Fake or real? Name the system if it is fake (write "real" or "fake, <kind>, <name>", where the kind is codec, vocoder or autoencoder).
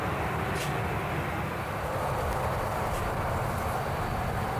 real